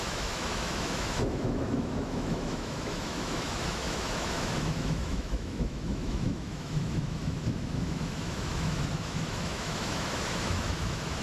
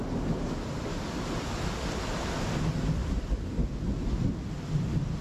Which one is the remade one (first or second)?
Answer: first